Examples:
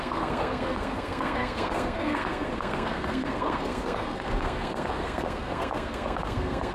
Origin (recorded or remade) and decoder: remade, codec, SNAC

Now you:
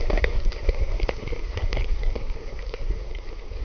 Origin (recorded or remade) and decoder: remade, codec, SNAC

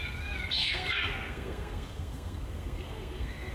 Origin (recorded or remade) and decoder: remade, codec, SNAC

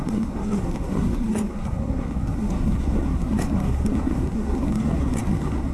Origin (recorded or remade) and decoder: remade, codec, SNAC